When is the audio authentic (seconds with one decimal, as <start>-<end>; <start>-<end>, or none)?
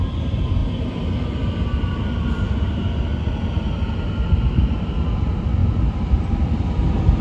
0.0-7.2